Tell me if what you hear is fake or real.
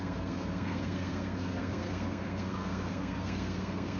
fake